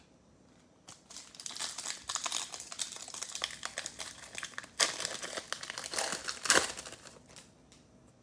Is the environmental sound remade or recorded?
recorded